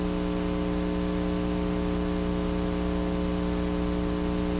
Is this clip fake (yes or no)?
no